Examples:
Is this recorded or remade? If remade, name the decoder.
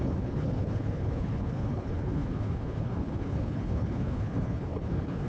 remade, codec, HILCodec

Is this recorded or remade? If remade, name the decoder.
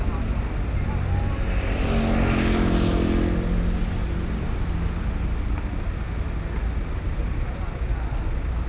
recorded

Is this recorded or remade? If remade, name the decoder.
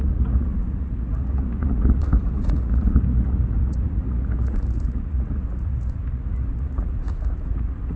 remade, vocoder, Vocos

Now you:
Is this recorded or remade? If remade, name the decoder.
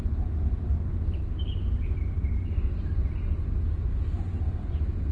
recorded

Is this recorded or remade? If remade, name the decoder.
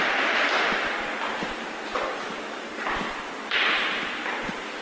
remade, vocoder, BigVGAN v2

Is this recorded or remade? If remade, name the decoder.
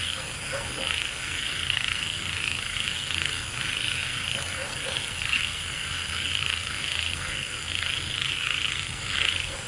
remade, codec, SNAC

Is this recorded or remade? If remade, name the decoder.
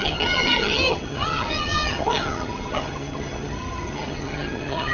remade, vocoder, HiFi-GAN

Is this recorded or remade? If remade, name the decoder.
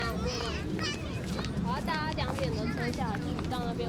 recorded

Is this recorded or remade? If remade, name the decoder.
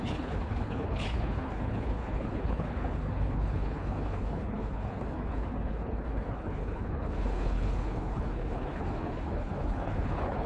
remade, codec, HILCodec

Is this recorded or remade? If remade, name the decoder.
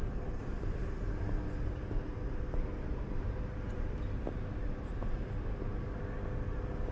recorded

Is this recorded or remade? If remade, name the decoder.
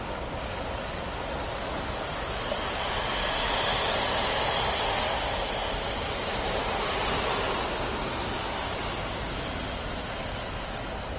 recorded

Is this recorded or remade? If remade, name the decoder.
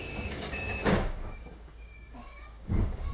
remade, codec, DAC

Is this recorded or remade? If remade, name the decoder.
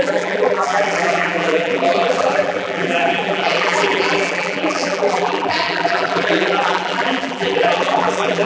remade, vocoder, BigVGAN v2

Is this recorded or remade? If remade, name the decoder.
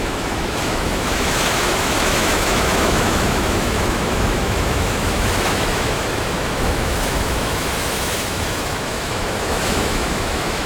remade, autoencoder, DAC-VAE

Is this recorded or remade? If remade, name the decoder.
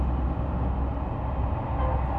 recorded